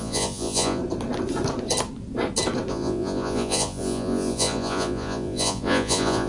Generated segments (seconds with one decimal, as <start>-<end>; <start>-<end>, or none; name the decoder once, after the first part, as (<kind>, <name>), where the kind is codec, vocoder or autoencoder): 0.0-0.8 (vocoder, Vocos); 2.7-6.3